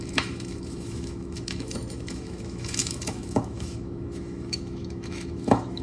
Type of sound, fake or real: fake